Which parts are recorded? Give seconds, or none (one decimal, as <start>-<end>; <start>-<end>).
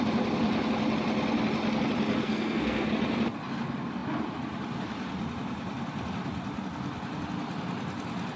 0.0-2.2; 2.9-8.4